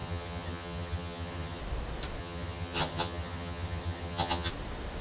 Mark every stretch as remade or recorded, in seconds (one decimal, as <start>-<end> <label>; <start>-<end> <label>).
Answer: 0.0-1.6 remade; 1.6-2.2 recorded; 2.2-4.5 remade; 4.5-5.0 recorded